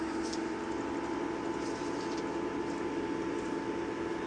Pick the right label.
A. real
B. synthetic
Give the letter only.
A